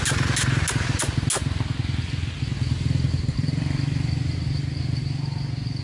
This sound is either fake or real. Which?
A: real